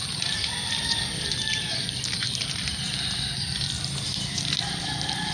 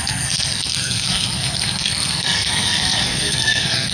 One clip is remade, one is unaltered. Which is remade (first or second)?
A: second